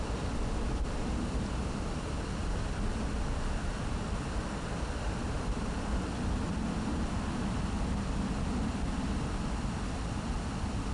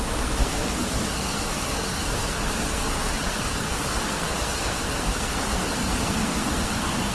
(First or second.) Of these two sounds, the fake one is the second